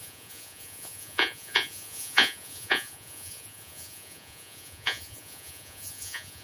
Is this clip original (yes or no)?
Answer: no